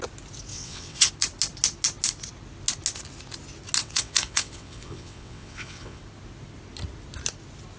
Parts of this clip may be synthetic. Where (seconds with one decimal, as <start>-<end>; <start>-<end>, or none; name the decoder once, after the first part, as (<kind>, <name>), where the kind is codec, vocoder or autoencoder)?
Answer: 0.5-1.1 (vocoder, WaveNeXt); 3.8-6.0